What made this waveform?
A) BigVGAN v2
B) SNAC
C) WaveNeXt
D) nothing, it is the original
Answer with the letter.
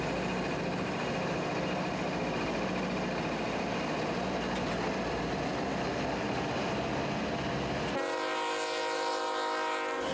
D